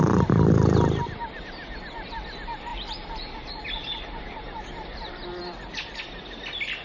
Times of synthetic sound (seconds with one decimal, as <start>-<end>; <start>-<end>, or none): 2.7-5.4